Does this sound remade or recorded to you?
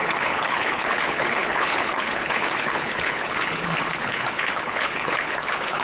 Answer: remade